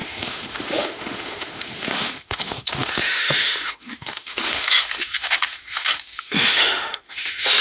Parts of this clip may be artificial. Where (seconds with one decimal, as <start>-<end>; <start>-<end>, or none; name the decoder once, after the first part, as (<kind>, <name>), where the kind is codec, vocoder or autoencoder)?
0.0-7.6 (autoencoder, DAC-VAE)